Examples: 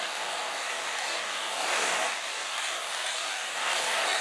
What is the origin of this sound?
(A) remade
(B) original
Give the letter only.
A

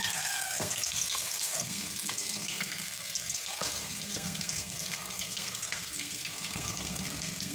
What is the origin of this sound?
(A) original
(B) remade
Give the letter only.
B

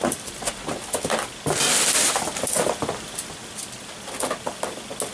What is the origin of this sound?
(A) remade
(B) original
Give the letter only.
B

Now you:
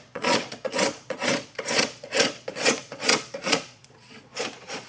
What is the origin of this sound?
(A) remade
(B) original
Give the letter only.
A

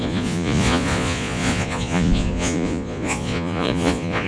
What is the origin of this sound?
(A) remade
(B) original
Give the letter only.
A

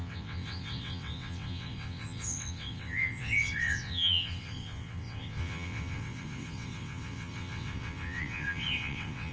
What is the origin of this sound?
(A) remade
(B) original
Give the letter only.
A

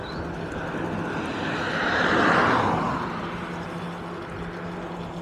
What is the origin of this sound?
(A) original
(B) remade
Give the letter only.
A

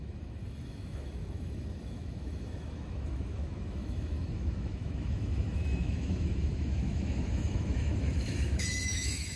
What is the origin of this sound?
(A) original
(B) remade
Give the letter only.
B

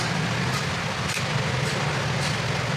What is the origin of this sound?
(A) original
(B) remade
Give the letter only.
A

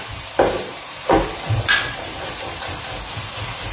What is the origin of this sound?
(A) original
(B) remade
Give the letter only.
B